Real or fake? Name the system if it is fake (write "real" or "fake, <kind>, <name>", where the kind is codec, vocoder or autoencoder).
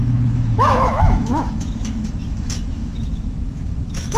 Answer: fake, autoencoder, DAC-VAE